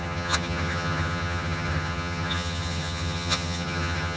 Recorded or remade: remade